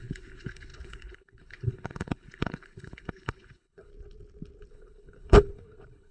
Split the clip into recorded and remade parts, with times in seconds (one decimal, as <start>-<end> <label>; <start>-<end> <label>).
0.0-3.9 remade; 3.9-4.7 recorded; 4.7-6.1 remade